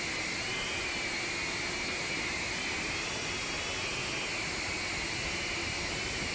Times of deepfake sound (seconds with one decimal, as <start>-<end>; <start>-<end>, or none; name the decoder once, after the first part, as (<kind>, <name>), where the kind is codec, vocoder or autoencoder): none